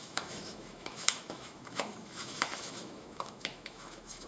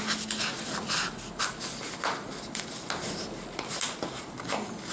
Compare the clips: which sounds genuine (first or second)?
second